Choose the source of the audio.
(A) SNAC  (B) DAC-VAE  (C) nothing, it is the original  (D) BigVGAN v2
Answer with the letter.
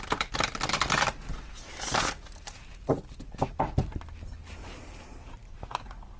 C